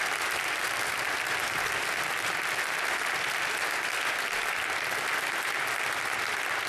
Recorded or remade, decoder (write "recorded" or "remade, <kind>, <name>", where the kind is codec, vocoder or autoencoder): recorded